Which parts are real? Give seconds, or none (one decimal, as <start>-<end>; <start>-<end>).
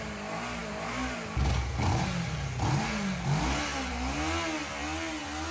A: 0.0-5.5